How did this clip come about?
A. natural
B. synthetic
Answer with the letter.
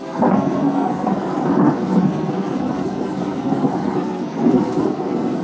B